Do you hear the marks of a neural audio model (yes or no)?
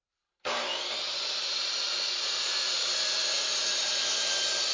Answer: yes